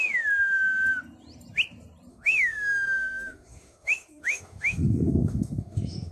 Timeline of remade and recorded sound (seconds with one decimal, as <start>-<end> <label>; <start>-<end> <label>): 0.0-2.1 recorded; 2.1-6.1 remade